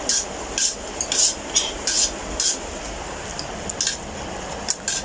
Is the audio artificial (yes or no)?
no